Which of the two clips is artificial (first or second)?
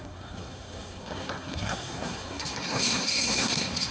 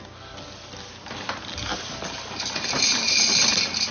first